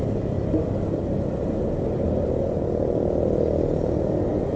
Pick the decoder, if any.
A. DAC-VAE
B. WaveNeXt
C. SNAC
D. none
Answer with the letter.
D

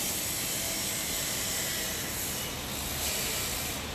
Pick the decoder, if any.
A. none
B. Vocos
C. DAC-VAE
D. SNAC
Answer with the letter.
A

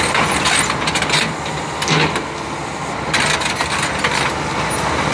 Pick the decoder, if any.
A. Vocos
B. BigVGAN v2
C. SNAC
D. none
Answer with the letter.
D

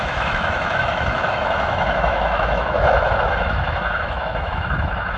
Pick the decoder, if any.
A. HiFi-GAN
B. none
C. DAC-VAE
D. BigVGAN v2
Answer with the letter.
C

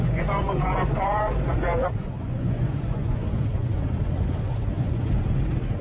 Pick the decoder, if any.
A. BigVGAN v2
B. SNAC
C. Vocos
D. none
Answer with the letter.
C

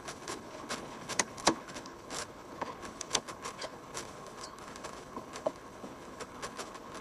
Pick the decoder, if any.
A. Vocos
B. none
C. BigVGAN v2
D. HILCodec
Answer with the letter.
D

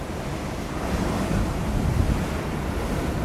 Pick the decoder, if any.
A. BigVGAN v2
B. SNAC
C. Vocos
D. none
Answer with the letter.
D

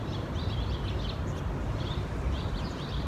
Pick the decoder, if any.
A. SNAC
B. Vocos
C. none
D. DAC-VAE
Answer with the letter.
C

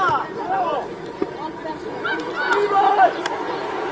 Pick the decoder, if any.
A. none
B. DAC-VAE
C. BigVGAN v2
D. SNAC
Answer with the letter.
A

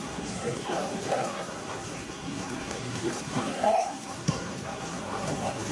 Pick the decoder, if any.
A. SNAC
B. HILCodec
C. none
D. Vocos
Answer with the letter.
A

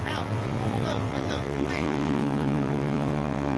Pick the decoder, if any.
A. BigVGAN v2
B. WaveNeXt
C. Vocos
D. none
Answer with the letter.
B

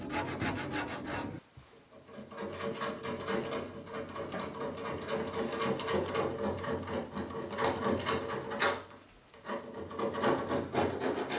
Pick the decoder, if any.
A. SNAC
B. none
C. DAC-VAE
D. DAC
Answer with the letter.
B